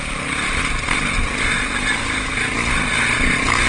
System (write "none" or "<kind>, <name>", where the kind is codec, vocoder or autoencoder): none